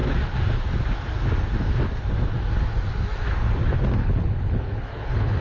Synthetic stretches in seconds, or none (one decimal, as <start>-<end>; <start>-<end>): 4.0-5.4